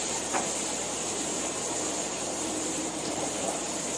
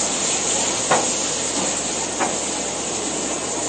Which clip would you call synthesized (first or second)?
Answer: first